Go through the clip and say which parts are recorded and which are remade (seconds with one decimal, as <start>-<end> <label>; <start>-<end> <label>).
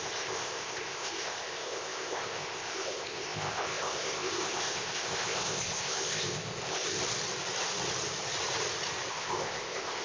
0.0-7.0 remade; 7.0-9.1 recorded; 9.1-10.0 remade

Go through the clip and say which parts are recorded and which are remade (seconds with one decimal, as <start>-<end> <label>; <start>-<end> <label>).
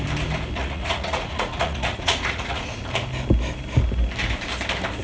0.0-0.6 recorded; 0.6-2.6 remade; 2.6-5.0 recorded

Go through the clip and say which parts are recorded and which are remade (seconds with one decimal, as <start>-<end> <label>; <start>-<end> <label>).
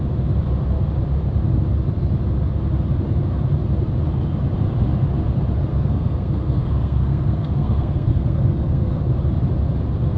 0.0-5.7 recorded; 5.7-9.0 remade; 9.0-10.2 recorded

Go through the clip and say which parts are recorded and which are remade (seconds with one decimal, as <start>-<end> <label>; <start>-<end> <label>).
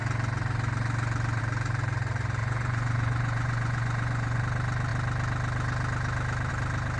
0.0-2.4 recorded; 2.4-4.4 remade; 4.4-7.0 recorded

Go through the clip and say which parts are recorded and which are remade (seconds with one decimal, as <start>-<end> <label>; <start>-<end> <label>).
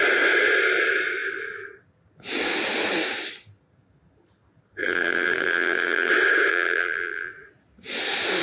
0.0-4.8 recorded; 4.8-6.1 remade; 6.1-6.5 recorded; 6.5-7.3 remade; 7.3-8.4 recorded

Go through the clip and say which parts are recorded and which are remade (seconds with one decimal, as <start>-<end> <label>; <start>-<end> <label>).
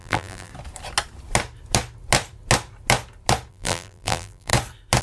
0.0-0.5 remade; 0.5-3.5 recorded; 3.5-4.5 remade; 4.5-5.0 recorded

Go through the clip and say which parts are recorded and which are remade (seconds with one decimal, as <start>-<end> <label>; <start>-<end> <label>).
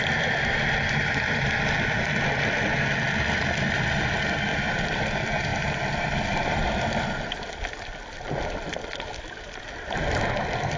0.0-4.5 recorded; 4.5-5.0 remade; 5.0-10.8 recorded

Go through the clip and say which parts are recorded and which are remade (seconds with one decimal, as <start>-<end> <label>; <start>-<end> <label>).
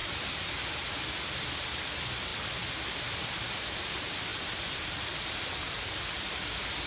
0.0-6.9 recorded